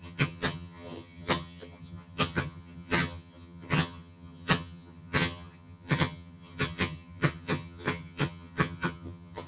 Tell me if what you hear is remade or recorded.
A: remade